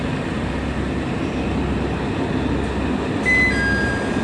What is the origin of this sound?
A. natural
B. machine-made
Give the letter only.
A